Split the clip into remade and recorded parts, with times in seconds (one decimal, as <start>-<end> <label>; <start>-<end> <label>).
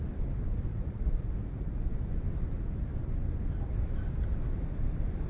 0.0-0.7 recorded; 0.7-1.9 remade; 1.9-5.3 recorded